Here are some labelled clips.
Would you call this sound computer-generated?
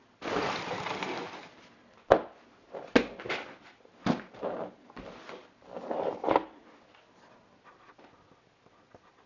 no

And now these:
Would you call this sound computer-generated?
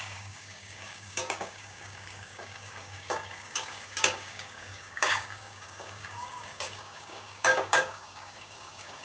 yes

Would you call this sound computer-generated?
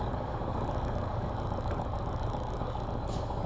yes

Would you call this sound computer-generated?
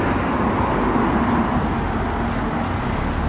no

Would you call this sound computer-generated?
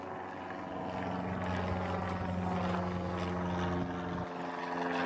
no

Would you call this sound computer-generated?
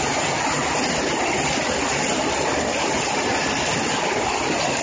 no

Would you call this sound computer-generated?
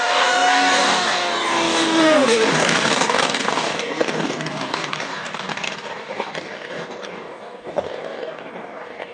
yes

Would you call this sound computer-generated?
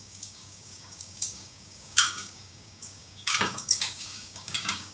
yes